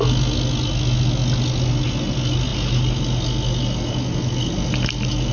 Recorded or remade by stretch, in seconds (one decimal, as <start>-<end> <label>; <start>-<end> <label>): 0.0-5.3 recorded